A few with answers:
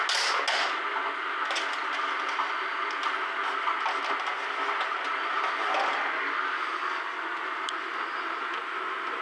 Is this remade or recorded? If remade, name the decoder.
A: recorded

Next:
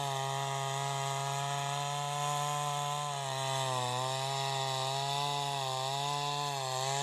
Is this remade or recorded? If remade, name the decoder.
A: recorded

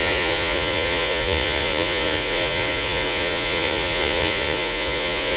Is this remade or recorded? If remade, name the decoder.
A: remade, vocoder, Vocos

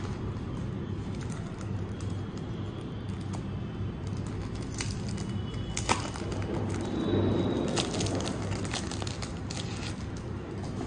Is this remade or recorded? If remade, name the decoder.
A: recorded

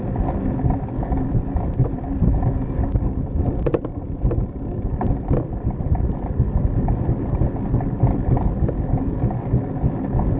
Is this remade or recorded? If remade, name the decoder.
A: recorded